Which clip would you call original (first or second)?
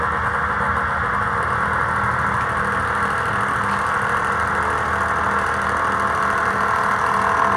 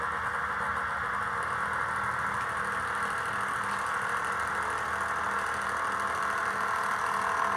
second